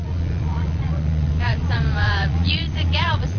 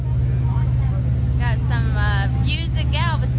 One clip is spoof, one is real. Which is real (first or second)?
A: second